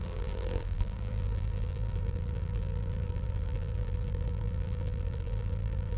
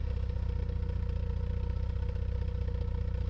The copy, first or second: first